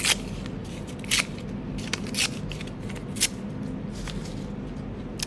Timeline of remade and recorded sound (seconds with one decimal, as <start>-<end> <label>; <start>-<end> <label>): 0.0-5.3 recorded